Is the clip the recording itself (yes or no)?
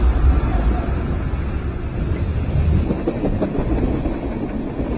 yes